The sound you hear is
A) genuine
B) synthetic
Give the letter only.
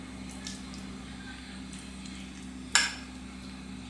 A